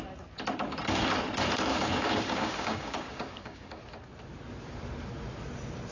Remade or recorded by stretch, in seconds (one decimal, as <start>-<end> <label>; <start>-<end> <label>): 0.0-1.7 recorded; 1.7-3.8 remade; 3.8-5.9 recorded